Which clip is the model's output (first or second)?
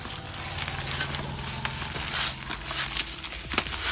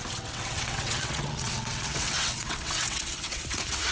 second